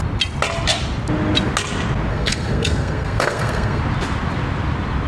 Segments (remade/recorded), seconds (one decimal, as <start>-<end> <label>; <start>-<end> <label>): 0.0-2.1 recorded; 2.1-3.8 remade; 3.8-5.1 recorded